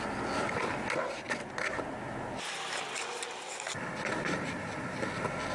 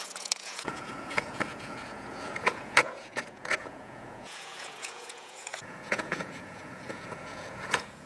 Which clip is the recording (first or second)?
first